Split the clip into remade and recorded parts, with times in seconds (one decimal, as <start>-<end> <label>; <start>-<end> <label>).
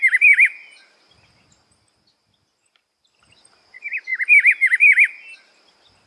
0.0-6.1 recorded